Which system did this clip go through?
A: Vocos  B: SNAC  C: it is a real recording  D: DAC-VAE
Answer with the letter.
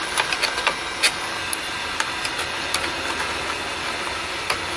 C